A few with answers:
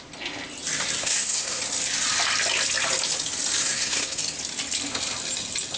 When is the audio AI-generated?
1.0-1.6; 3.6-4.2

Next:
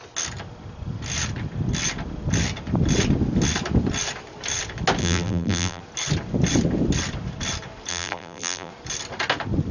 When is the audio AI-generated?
5.0-5.8; 7.9-8.7

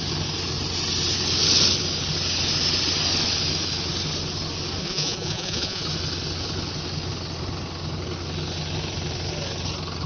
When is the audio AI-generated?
4.8-5.8

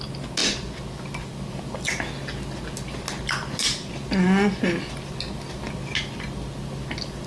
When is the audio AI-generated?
none